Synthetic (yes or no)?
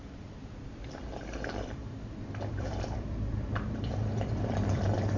yes